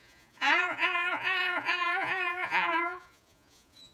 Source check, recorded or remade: remade